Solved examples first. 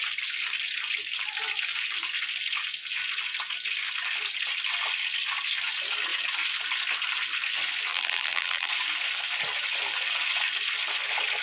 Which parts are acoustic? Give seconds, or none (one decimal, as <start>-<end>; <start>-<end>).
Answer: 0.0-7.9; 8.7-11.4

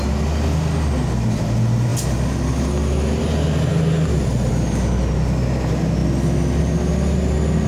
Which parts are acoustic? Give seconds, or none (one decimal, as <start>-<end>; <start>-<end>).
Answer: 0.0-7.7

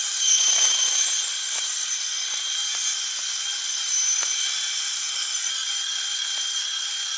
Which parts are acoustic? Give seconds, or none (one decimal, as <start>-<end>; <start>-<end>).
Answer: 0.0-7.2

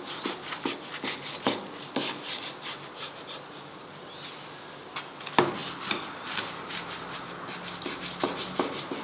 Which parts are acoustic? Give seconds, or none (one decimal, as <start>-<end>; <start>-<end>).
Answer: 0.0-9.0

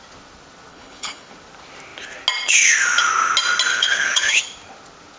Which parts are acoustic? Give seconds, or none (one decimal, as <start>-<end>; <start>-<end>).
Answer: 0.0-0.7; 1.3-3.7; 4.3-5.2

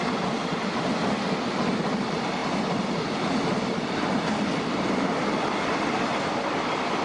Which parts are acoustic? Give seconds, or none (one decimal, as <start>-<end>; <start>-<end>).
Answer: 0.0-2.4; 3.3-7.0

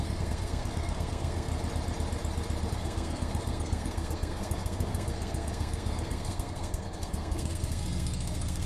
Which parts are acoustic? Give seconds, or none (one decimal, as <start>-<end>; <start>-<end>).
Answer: 1.5-2.7